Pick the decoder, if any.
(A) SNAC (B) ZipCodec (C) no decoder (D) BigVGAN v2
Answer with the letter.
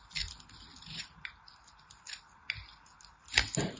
C